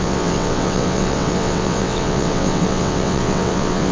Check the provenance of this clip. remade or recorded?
remade